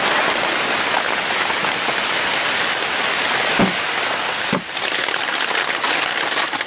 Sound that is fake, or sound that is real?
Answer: real